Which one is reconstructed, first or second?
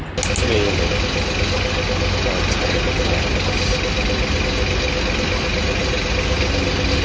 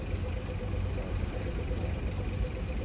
second